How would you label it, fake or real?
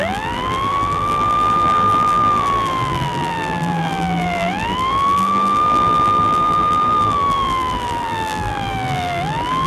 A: fake